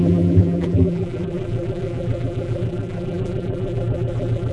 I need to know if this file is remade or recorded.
remade